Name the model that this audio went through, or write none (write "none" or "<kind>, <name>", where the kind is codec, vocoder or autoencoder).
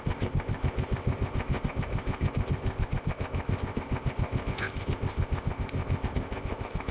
codec, ZipCodec